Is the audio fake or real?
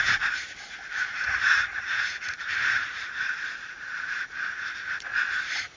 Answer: fake